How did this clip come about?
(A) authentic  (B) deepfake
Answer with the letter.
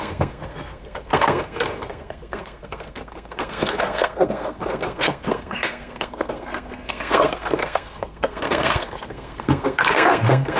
B